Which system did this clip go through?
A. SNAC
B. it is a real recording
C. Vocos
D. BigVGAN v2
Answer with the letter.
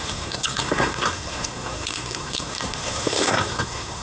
A